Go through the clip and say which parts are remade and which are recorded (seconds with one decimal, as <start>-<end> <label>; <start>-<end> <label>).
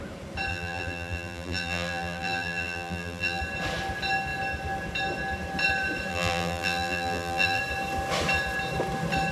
0.0-0.5 recorded; 0.5-3.4 remade; 3.4-6.1 recorded; 6.1-7.6 remade; 7.6-9.3 recorded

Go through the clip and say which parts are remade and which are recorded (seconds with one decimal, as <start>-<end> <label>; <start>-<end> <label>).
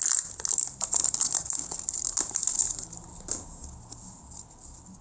0.0-5.0 recorded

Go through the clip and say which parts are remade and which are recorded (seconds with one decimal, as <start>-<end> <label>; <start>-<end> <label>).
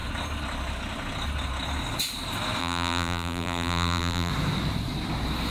0.0-2.6 recorded; 2.6-4.3 remade; 4.3-5.5 recorded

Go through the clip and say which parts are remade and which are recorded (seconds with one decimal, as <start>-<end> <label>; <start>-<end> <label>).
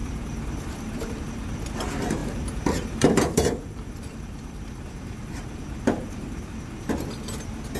0.0-1.2 remade; 1.2-2.2 recorded; 2.2-6.5 remade; 6.5-7.8 recorded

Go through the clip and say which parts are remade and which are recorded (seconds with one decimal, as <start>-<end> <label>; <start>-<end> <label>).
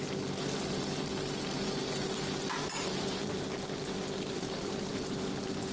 0.0-2.6 recorded; 2.6-5.3 remade; 5.3-5.7 recorded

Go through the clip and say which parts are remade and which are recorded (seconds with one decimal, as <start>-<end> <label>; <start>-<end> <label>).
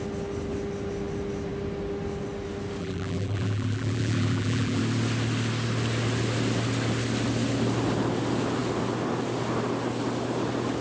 0.0-2.8 recorded; 2.8-4.8 remade; 4.8-10.8 recorded